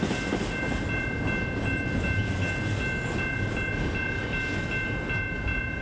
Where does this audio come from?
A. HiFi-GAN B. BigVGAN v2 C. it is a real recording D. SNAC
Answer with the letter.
C